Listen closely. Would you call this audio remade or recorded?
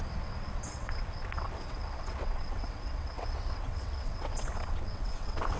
remade